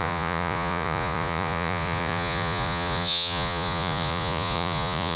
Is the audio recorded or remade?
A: remade